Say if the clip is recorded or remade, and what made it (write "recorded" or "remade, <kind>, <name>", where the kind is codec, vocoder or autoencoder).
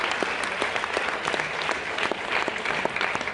recorded